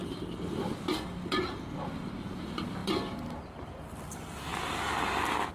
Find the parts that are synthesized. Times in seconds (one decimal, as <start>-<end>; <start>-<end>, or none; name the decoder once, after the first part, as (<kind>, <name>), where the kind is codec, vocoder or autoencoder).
1.4-4.5 (vocoder, BigVGAN v2)